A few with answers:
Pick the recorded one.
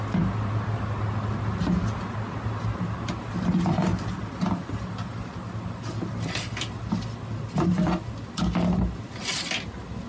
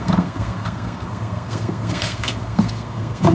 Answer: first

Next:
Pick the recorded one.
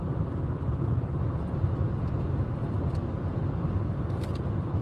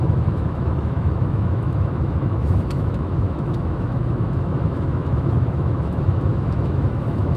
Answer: first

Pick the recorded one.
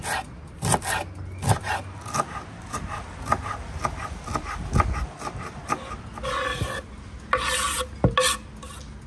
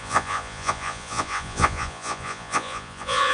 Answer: first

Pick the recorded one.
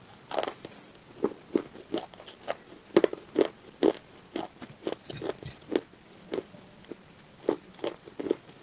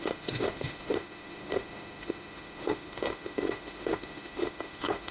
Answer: first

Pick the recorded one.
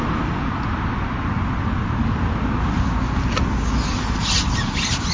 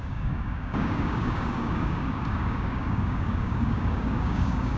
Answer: first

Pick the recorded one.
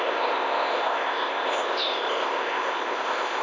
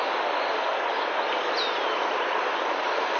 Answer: second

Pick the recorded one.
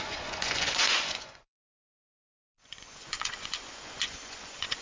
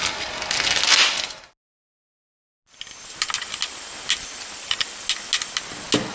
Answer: second